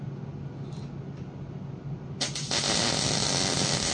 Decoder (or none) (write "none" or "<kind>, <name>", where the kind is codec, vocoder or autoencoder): none